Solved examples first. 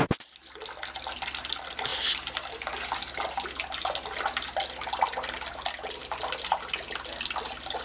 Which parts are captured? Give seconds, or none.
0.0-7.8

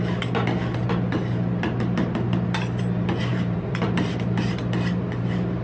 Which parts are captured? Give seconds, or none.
0.0-3.3; 4.1-5.6

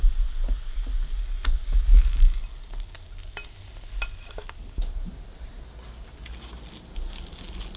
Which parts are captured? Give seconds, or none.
0.0-7.8